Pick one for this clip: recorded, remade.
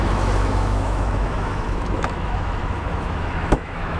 remade